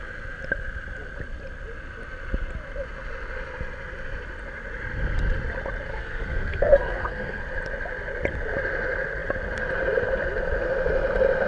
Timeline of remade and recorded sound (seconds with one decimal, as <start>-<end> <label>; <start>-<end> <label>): 0.0-5.9 recorded; 5.9-7.4 remade; 7.4-11.5 recorded